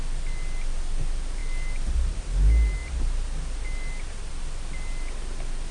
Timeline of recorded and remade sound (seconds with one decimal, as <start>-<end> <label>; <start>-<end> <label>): 0.0-5.7 recorded